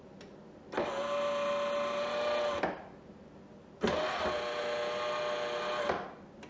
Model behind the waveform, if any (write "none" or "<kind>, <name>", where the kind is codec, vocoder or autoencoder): none